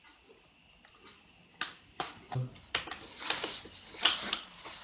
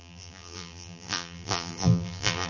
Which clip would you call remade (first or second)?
second